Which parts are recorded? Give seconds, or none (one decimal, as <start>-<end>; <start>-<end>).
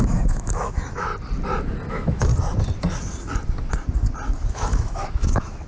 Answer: 1.1-1.9; 2.3-4.5